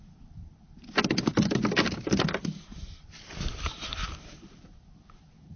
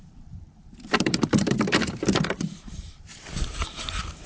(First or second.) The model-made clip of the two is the second